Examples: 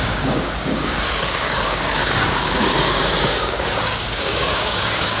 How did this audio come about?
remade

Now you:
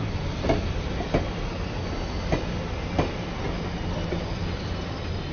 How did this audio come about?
recorded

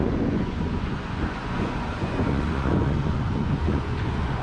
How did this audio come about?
remade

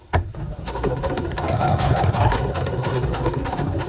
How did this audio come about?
remade